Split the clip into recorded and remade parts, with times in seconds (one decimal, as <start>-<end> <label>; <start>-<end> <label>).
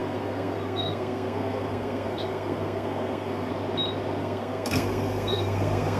0.0-3.5 remade; 3.5-4.2 recorded; 4.2-6.0 remade